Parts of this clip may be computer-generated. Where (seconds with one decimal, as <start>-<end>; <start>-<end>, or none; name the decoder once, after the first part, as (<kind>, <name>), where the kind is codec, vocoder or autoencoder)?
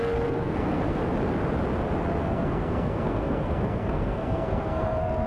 0.0-1.0 (codec, SNAC); 2.2-5.3